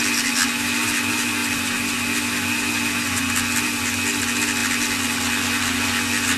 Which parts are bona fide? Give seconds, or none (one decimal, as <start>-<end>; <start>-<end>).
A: 0.0-6.4